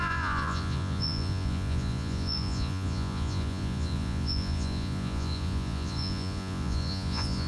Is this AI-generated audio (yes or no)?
yes